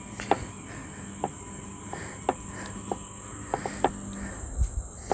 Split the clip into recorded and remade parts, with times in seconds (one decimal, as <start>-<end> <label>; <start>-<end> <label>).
0.0-5.1 recorded

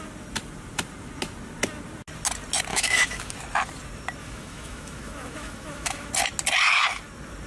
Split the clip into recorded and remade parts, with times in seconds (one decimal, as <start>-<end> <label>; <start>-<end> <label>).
0.0-2.7 recorded; 2.7-3.3 remade; 3.3-4.2 recorded; 4.2-6.1 remade; 6.1-7.5 recorded

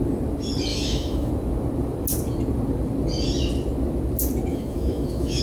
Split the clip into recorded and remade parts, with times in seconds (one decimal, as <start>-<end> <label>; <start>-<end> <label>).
0.0-0.7 recorded; 0.7-1.3 remade; 1.3-4.5 recorded; 4.5-5.4 remade

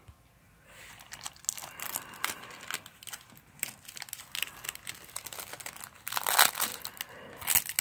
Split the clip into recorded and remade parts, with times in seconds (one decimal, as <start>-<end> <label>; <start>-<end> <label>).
0.0-7.8 recorded

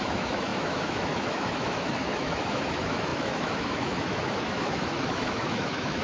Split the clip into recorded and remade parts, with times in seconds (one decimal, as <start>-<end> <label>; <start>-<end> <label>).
0.0-6.0 remade

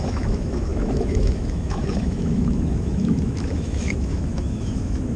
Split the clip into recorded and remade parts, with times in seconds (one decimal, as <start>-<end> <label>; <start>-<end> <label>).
0.0-5.2 remade

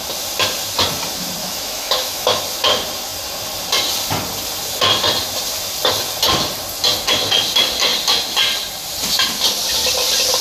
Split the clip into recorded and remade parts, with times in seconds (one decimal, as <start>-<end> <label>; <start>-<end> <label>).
0.0-1.4 recorded; 1.4-2.4 remade; 2.4-10.4 recorded